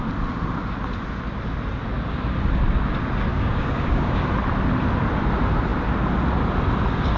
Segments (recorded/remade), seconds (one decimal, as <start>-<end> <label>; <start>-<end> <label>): 0.0-3.3 recorded; 3.3-4.2 remade; 4.2-7.2 recorded